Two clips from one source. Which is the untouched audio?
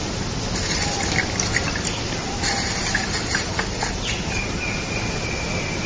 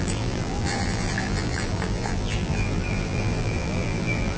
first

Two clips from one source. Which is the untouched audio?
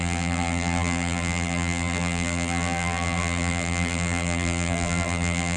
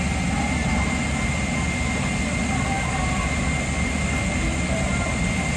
second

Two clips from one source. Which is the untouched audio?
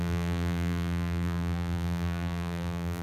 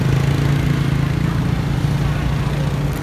second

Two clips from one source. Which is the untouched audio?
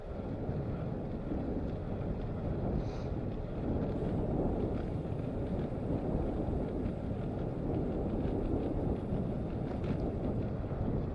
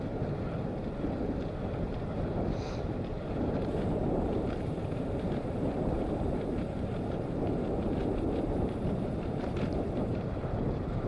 first